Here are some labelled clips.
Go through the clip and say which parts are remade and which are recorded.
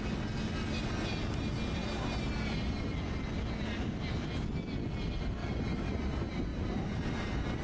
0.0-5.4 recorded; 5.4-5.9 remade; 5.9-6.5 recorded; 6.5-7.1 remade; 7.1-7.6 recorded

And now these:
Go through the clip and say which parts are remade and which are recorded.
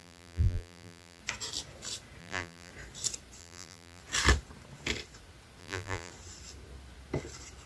0.0-1.2 remade; 1.2-2.2 recorded; 2.2-2.7 remade; 2.7-3.4 recorded; 3.4-4.0 remade; 4.0-5.6 recorded; 5.6-6.1 remade; 6.1-7.7 recorded